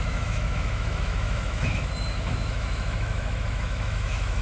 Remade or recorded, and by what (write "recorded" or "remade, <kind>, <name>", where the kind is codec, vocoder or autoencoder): remade, autoencoder, DAC-VAE